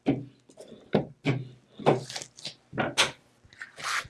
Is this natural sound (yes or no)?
yes